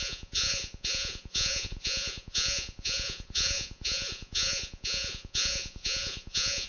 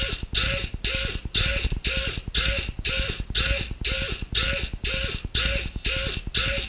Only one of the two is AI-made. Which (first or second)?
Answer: first